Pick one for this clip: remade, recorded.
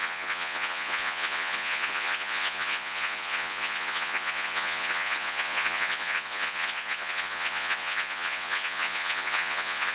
remade